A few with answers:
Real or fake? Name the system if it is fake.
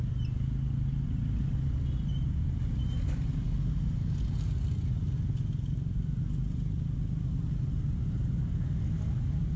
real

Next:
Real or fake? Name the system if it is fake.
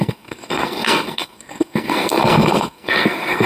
fake, codec, SNAC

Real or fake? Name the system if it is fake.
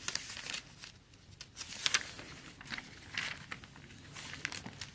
real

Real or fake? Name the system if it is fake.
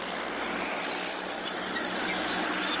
real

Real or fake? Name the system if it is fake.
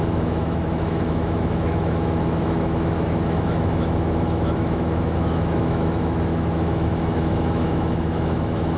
fake, autoencoder, DAC-VAE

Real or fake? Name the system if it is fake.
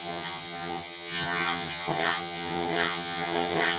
fake, vocoder, HiFi-GAN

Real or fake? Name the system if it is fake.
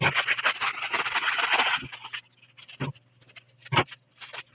real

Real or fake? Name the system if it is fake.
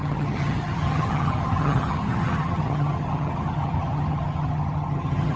fake, vocoder, HiFi-GAN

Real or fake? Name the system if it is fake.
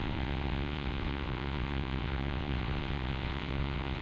fake, vocoder, WaveNeXt